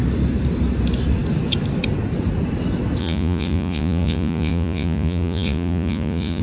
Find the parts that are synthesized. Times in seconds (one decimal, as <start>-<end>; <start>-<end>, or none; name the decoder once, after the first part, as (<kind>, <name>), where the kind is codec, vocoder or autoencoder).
3.0-6.4 (vocoder, Vocos)

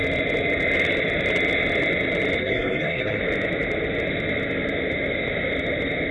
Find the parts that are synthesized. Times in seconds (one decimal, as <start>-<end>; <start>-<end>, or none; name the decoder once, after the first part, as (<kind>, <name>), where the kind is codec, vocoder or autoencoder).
2.4-3.2 (codec, SNAC)

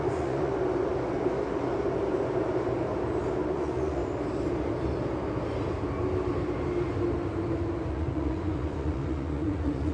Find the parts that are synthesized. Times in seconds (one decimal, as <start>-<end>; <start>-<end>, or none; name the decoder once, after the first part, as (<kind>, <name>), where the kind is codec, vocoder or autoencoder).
0.0-0.5 (vocoder, Vocos); 3.5-4.0; 7.9-9.9

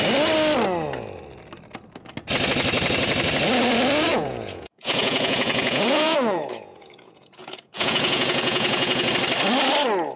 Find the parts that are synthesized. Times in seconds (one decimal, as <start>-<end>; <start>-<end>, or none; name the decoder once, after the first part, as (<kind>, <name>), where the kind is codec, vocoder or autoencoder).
4.1-9.1 (vocoder, Vocos)